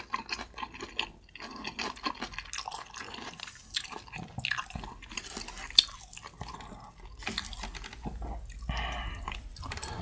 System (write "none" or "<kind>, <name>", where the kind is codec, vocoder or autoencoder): none